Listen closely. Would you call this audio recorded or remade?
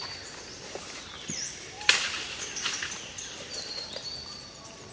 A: remade